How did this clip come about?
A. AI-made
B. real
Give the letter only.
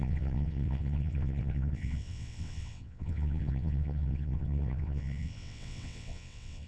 A